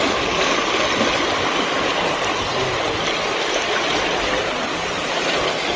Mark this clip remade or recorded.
recorded